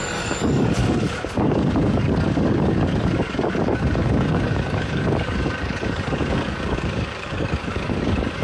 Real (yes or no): no